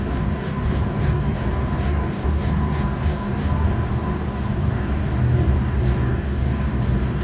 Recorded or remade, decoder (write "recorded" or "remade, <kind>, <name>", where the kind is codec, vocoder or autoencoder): remade, codec, DAC